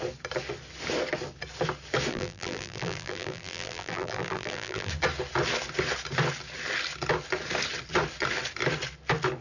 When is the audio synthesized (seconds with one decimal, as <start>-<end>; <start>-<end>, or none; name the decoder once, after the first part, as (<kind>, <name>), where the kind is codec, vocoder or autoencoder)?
2.1-4.9 (vocoder, BigVGAN v2)